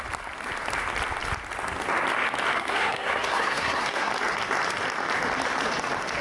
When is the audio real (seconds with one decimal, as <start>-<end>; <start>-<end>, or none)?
0.0-2.5; 4.1-6.2